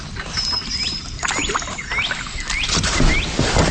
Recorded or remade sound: recorded